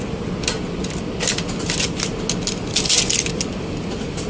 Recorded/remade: recorded